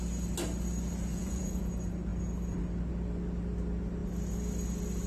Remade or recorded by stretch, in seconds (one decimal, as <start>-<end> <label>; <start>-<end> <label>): 0.0-1.1 recorded; 1.1-1.7 remade; 1.7-5.1 recorded